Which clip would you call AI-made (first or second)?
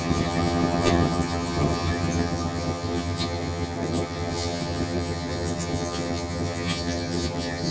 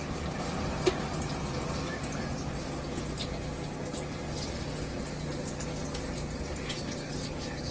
first